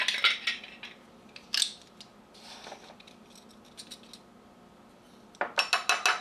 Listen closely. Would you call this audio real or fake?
real